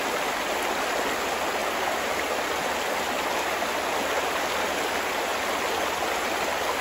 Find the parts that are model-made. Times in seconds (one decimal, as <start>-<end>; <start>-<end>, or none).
none